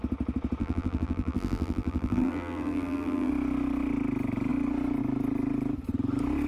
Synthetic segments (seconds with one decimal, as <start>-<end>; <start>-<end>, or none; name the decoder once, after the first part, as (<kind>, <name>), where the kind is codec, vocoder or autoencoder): 0.6-3.3 (vocoder, BigVGAN v2)